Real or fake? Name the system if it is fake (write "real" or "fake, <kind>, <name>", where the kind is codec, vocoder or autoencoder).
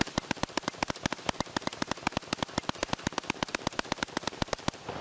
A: real